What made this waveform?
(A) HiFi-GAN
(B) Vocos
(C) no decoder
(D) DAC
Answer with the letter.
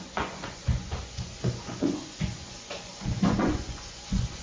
B